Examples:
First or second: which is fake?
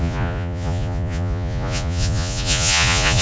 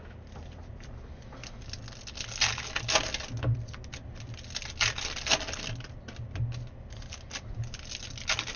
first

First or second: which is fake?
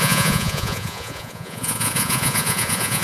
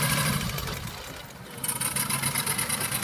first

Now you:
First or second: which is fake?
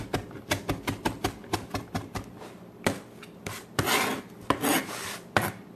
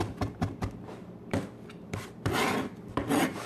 second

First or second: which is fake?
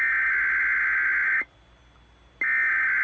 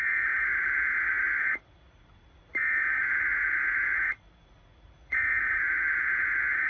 second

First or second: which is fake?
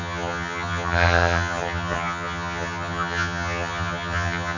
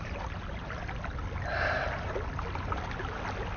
first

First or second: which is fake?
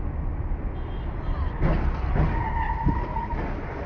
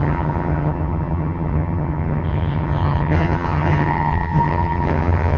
second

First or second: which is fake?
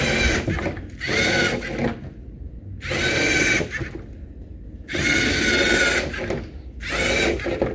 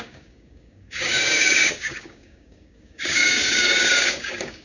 second